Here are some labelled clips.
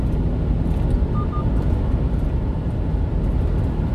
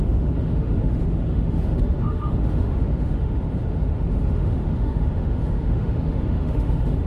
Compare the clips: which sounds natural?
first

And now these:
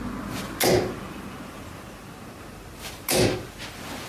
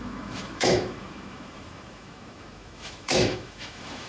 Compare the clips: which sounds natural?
first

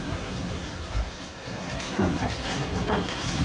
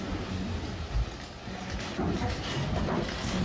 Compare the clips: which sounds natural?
second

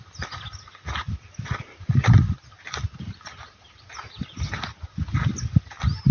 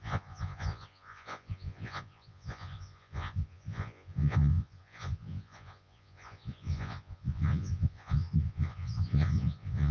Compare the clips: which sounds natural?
first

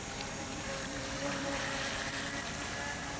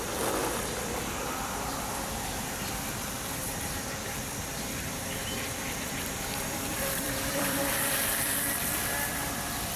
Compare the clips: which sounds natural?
first